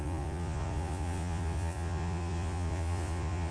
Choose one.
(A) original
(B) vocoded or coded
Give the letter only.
B